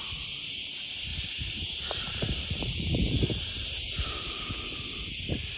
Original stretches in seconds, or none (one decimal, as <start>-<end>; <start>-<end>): 0.0-1.1; 4.5-5.6